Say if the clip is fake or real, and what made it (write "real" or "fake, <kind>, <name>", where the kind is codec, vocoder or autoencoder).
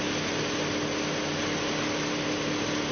real